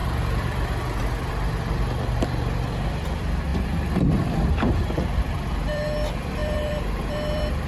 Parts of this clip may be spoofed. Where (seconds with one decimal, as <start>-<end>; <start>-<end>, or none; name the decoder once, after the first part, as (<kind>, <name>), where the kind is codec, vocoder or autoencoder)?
0.0-7.7 (vocoder, BigVGAN v2)